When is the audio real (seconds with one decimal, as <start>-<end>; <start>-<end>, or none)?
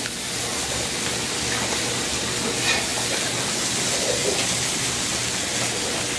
0.0-6.2